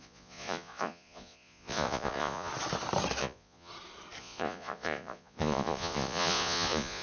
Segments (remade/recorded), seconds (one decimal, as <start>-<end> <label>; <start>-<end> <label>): 0.0-2.5 remade; 2.5-3.2 recorded; 3.2-3.7 remade; 3.7-4.2 recorded; 4.2-7.0 remade